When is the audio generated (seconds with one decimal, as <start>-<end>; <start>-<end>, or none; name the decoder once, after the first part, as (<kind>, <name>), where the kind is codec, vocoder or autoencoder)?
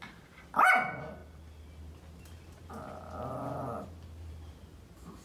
none